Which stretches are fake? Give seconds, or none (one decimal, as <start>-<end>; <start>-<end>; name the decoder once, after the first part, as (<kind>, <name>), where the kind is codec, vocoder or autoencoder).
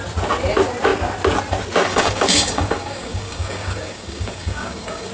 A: 1.9-5.1 (codec, DAC)